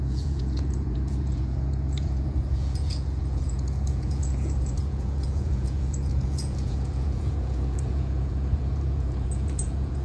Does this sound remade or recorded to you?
remade